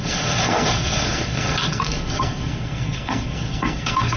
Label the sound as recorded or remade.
remade